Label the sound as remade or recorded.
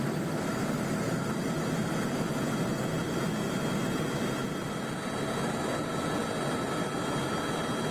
recorded